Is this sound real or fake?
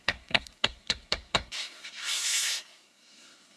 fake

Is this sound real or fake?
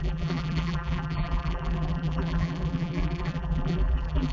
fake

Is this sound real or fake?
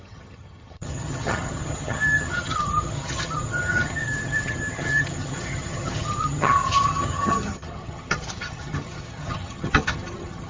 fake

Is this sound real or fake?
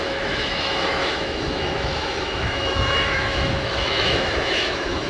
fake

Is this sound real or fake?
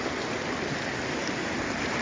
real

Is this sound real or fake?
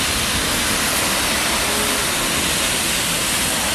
real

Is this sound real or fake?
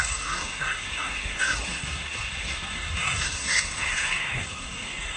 fake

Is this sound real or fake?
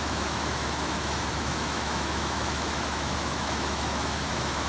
fake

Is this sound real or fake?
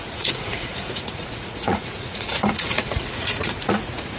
fake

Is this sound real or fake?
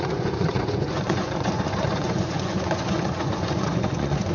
fake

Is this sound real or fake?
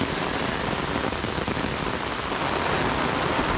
real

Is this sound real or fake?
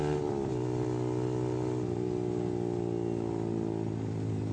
real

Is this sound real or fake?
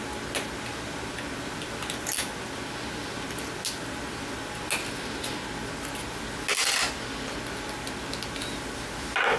real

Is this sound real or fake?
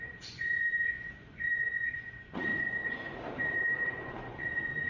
fake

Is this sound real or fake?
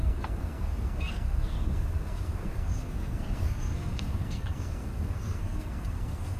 fake